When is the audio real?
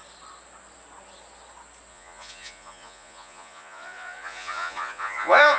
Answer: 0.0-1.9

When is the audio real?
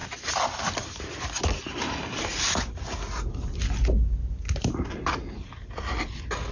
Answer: 0.0-6.5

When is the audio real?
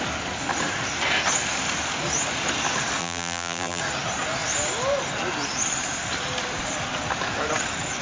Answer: 0.0-3.0; 3.8-8.0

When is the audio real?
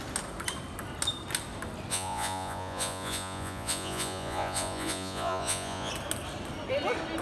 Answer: 0.0-1.9; 5.9-7.2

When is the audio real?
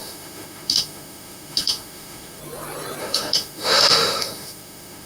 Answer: 2.4-3.0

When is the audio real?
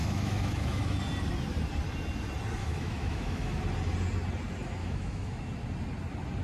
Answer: 1.0-2.6; 3.6-4.8; 5.4-6.4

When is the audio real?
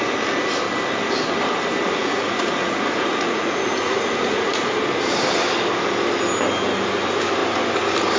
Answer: 0.0-2.0; 4.6-8.2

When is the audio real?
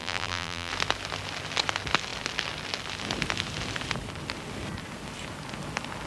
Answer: 0.7-6.1